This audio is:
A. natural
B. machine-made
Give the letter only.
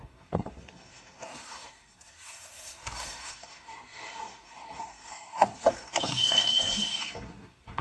B